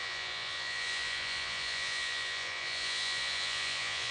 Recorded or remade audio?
remade